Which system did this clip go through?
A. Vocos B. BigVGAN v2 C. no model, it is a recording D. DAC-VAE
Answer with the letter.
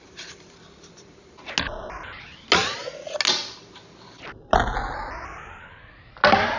C